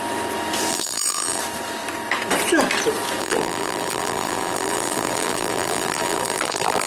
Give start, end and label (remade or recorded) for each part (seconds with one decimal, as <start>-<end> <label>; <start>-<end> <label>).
0.0-0.7 recorded; 0.7-1.4 remade; 1.4-3.2 recorded; 3.2-6.9 remade